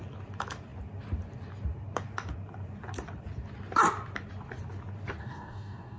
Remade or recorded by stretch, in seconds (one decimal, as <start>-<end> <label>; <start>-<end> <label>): 0.0-5.2 recorded; 5.2-6.0 remade